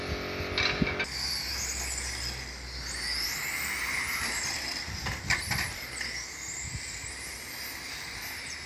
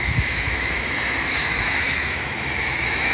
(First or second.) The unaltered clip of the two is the first